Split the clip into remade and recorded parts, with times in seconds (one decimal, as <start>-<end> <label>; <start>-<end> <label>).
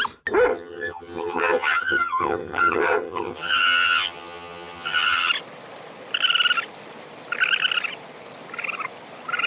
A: 0.0-0.5 recorded; 0.5-5.3 remade; 5.3-9.5 recorded